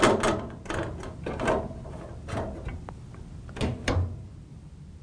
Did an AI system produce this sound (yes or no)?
no